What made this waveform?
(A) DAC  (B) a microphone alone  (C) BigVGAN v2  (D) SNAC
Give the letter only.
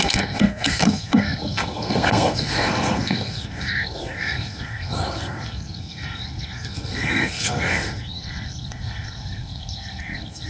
D